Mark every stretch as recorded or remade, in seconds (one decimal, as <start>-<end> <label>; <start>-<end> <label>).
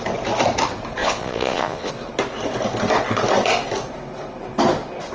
0.0-1.0 recorded; 1.0-1.9 remade; 1.9-5.1 recorded